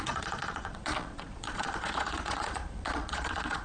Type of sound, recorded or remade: remade